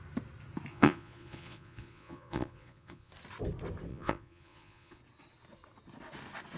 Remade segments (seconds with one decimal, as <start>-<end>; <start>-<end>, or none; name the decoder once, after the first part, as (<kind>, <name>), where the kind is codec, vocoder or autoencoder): 0.7-3.1 (vocoder, Vocos); 3.9-5.0